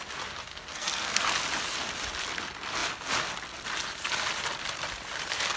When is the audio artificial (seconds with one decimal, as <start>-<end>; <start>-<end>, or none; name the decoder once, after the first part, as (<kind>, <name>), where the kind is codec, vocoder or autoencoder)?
0.5-1.4 (codec, SNAC)